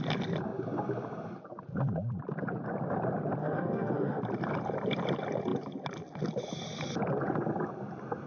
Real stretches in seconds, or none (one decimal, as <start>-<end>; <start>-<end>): 0.0-3.4; 4.2-8.3